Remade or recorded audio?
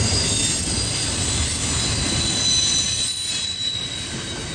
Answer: recorded